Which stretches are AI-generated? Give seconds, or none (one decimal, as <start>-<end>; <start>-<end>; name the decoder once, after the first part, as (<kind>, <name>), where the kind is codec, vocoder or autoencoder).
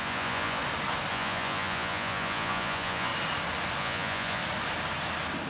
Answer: 0.0-0.6 (vocoder, Vocos); 1.1-3.1; 3.8-4.4